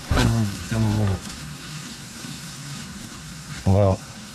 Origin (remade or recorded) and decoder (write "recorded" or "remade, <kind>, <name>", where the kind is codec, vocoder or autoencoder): remade, codec, SNAC